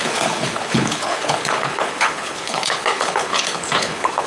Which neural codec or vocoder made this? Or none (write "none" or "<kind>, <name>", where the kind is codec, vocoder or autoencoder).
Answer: codec, HILCodec